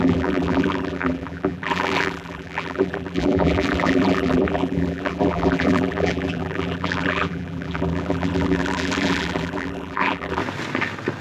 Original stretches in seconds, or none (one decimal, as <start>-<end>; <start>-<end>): 10.4-11.2